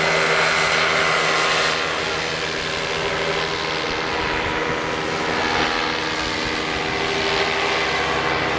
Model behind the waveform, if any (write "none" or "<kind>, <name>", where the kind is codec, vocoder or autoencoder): none